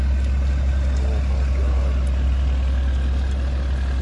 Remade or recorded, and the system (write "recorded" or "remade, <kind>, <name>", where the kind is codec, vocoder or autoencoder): recorded